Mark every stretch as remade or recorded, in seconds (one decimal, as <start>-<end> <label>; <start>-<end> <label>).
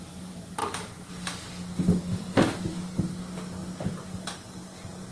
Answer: 0.0-5.1 recorded